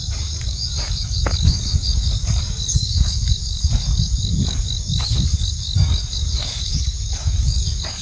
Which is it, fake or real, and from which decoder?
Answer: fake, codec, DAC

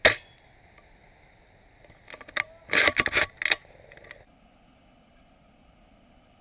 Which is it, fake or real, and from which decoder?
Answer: real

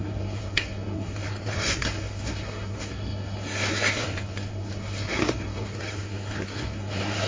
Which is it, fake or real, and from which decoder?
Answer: fake, codec, SNAC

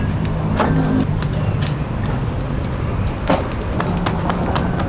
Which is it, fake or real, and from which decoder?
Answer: real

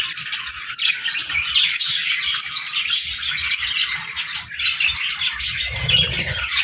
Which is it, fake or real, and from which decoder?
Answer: real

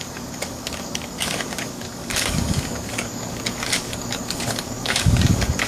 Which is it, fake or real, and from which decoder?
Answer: fake, codec, DAC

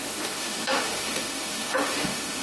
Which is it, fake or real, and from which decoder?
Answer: fake, autoencoder, DAC-VAE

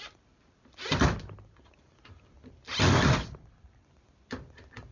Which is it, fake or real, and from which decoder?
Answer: real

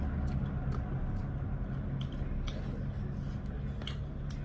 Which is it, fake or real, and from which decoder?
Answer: real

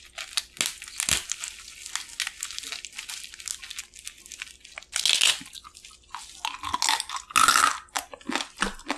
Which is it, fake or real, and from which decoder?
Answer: real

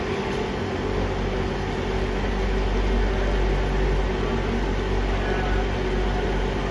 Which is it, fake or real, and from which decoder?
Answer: real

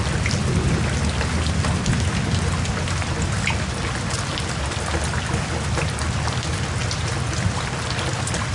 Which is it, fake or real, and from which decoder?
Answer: real